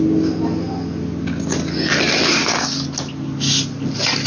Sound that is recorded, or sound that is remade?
recorded